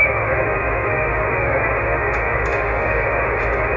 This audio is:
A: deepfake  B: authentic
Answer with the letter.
A